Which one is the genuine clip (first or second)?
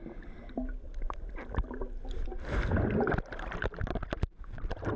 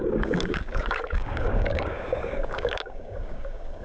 first